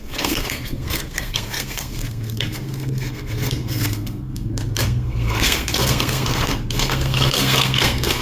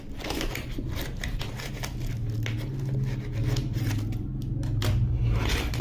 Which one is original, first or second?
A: second